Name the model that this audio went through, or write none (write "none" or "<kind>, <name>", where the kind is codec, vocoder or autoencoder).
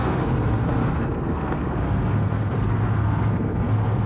codec, SNAC